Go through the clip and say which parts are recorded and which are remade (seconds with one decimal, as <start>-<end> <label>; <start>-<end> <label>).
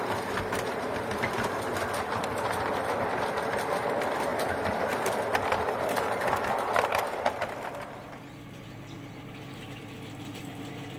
0.0-11.0 recorded